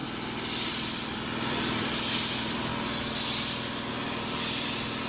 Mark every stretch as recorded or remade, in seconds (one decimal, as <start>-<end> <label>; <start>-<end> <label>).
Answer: 0.0-0.7 recorded; 0.7-2.7 remade; 2.7-3.9 recorded; 3.9-5.1 remade